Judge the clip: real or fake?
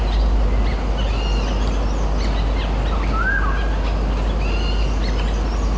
real